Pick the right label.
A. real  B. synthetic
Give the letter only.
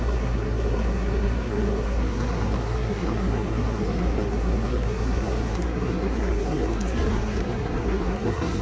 B